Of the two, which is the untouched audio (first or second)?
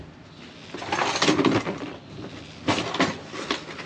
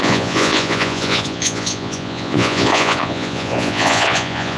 first